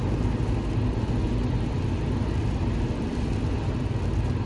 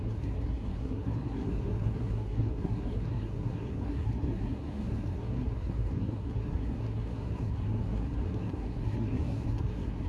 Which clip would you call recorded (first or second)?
first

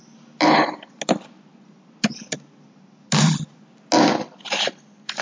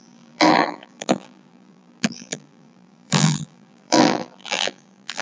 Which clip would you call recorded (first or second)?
first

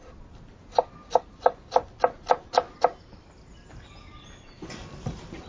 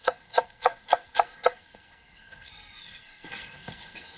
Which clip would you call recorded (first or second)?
first